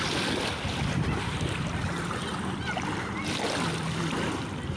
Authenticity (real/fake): fake